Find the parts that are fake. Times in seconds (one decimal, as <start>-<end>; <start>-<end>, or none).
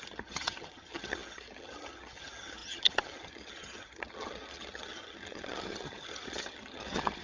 0.0-7.2